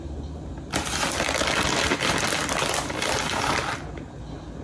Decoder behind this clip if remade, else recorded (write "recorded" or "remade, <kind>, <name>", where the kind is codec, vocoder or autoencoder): recorded